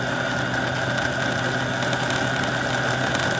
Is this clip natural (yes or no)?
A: yes